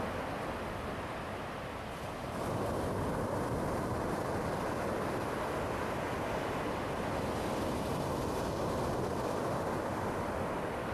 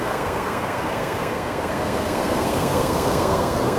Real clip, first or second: first